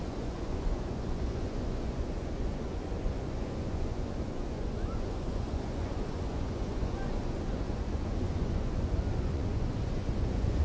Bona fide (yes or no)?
no